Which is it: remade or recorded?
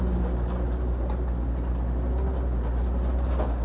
recorded